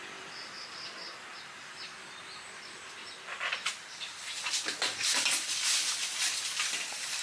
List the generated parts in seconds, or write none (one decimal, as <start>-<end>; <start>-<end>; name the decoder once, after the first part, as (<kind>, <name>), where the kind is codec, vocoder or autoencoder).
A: 0.0-3.0 (vocoder, BigVGAN v2); 5.3-7.2